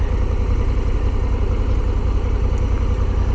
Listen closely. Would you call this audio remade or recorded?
recorded